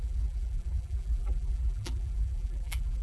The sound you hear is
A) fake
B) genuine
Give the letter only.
A